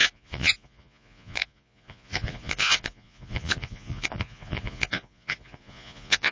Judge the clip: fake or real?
fake